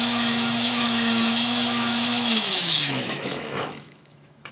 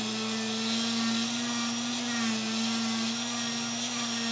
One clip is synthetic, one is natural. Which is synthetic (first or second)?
first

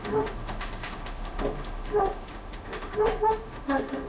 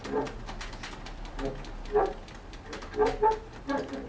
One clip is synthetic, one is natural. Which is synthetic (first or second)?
first